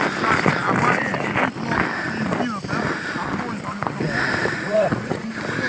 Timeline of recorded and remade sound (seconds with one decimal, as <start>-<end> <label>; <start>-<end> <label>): 0.0-4.4 recorded; 4.4-5.3 remade; 5.3-5.7 recorded